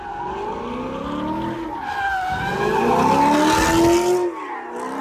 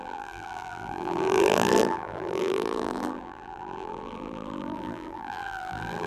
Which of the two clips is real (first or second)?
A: first